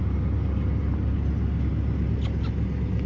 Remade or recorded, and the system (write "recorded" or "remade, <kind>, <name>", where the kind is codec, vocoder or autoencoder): recorded